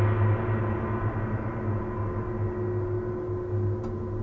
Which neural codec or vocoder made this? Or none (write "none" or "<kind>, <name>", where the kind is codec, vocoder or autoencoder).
none